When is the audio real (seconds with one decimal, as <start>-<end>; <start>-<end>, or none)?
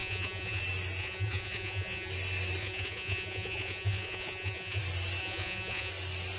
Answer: 0.6-1.0; 2.1-2.6; 4.8-5.2; 5.9-6.4